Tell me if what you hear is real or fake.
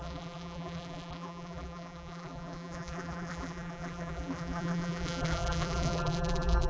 fake